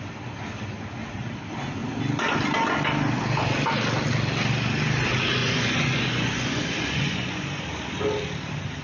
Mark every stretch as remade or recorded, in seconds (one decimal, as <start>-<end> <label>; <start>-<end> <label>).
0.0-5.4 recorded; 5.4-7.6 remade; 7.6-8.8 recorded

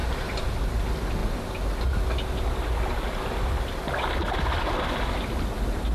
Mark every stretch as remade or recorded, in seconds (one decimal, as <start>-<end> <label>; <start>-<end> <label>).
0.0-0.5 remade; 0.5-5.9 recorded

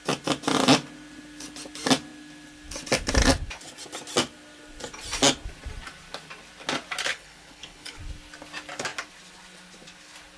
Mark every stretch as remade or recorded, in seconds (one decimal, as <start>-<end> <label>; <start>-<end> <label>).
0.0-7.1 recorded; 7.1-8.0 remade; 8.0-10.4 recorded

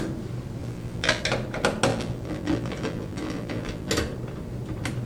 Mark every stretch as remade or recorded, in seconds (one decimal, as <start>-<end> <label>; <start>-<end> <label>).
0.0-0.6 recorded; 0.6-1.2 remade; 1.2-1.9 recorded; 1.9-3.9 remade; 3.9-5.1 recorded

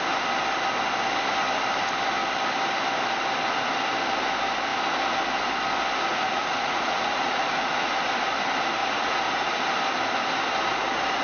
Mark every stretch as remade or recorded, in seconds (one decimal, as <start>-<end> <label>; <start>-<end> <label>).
0.0-6.1 recorded; 6.1-7.9 remade; 7.9-8.8 recorded; 8.8-9.6 remade; 9.6-11.2 recorded

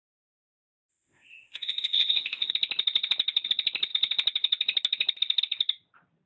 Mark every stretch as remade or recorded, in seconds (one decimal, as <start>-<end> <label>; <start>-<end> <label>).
0.0-0.9 recorded; 0.9-2.5 remade; 2.5-6.3 recorded

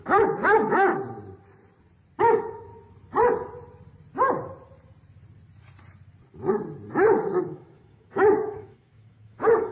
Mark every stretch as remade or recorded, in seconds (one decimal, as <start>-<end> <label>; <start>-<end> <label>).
0.0-0.9 remade; 0.9-2.2 recorded; 2.2-2.7 remade; 2.7-7.4 recorded; 7.4-9.7 remade

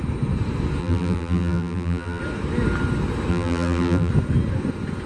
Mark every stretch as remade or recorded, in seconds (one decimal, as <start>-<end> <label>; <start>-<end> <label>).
0.0-0.8 recorded; 0.8-2.2 remade; 2.2-3.3 recorded; 3.3-4.1 remade; 4.1-5.1 recorded